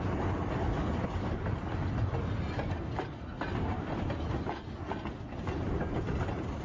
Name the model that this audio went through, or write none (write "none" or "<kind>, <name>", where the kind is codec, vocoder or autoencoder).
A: none